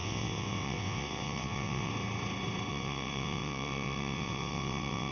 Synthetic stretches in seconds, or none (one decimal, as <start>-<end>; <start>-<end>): 0.0-1.9; 2.7-5.1